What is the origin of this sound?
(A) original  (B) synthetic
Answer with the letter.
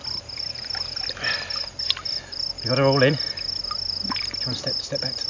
A